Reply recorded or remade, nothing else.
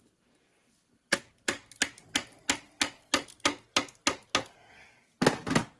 recorded